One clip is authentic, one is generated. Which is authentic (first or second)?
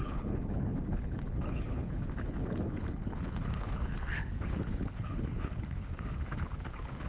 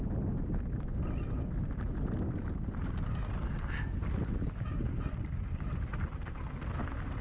second